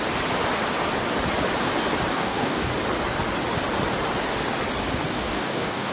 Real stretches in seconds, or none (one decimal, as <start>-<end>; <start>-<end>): 0.0-2.1; 2.7-5.1